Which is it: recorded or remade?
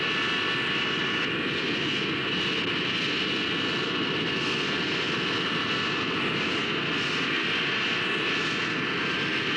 recorded